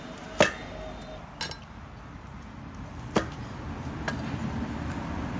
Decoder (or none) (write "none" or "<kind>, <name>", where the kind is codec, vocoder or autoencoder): none